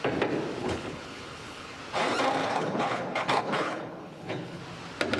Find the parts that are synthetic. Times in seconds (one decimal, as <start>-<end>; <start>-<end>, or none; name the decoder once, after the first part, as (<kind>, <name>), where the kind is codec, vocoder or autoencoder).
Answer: 0.6-1.8 (codec, HILCodec); 2.4-4.6